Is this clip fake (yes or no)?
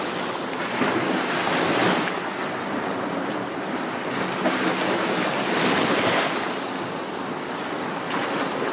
no